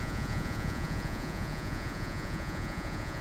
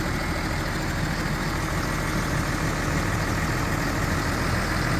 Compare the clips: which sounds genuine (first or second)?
second